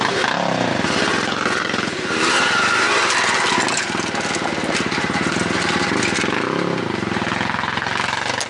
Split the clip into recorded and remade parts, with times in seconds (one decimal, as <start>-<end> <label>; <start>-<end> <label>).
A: 0.0-1.1 recorded; 1.1-2.1 remade; 2.1-8.5 recorded